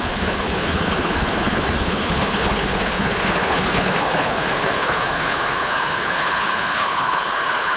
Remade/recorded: remade